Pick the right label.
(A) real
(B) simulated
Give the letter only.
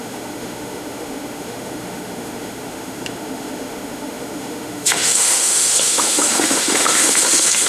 B